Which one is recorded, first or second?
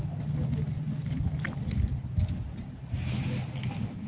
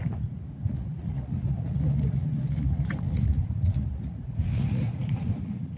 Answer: first